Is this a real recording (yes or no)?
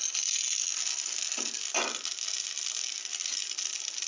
yes